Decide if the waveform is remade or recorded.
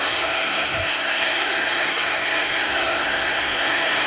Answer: remade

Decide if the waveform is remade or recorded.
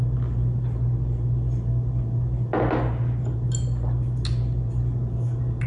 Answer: recorded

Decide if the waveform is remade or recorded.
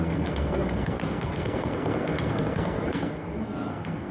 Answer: remade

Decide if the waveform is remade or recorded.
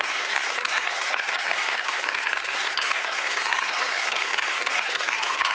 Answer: remade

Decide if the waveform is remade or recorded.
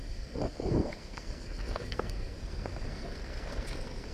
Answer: remade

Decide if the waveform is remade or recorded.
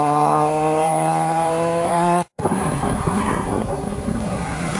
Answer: remade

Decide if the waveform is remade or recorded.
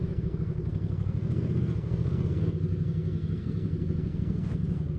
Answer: remade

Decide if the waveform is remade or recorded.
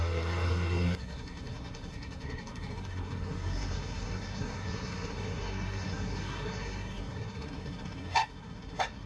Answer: remade